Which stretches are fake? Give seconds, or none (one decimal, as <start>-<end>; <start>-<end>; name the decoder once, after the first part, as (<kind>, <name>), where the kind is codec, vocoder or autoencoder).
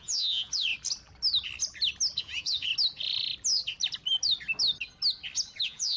0.0-0.7 (vocoder, Vocos); 2.2-2.7; 5.6-6.0